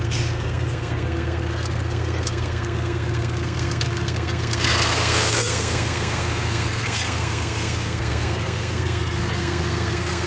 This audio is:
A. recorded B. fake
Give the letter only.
B